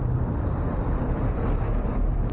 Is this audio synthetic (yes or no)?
yes